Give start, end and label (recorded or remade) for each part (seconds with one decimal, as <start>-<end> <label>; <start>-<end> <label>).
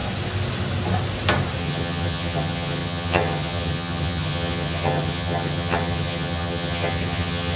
0.0-1.6 recorded; 1.6-7.6 remade